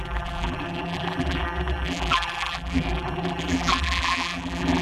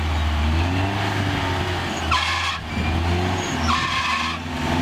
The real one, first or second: second